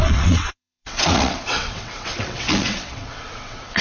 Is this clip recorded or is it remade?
remade